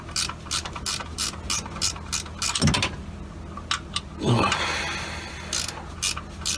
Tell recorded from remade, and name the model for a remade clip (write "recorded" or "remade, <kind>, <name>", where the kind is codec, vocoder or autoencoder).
recorded